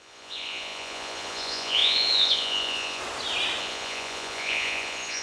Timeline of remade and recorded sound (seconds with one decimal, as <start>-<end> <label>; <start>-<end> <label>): 0.0-3.0 remade; 3.0-3.6 recorded; 3.6-5.2 remade